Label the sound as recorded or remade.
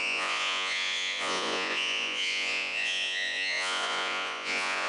remade